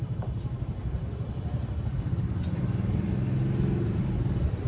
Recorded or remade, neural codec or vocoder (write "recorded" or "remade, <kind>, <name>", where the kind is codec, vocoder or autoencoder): recorded